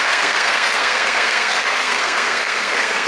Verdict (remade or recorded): remade